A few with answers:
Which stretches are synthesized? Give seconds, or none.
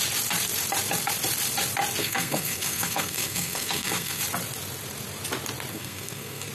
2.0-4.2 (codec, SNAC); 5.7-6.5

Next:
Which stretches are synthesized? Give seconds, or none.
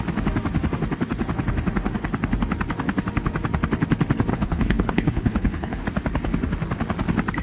4.3-5.8 (codec, HILCodec)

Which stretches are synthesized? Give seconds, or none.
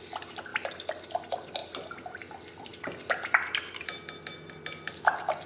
none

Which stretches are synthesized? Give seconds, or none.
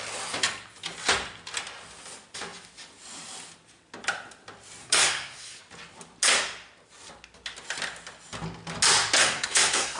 4.8-5.6 (codec, SNAC); 9.2-10.0